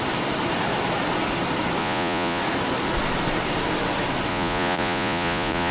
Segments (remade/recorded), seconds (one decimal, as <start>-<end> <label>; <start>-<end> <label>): 0.0-1.8 recorded; 1.8-2.4 remade; 2.4-4.3 recorded; 4.3-5.7 remade